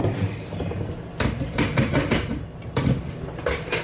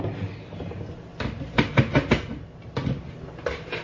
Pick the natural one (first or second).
second